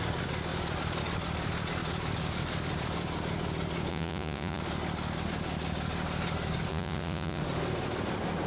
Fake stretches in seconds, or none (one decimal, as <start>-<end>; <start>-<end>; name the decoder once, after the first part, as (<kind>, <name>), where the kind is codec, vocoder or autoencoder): 3.9-4.6 (vocoder, Vocos); 6.7-7.4